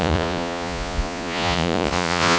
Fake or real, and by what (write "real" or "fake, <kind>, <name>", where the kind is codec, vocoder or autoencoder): fake, vocoder, Vocos